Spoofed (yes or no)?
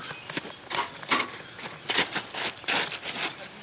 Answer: no